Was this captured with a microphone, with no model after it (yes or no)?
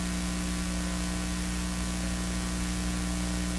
yes